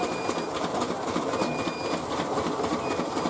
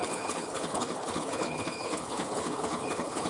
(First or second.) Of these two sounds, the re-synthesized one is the second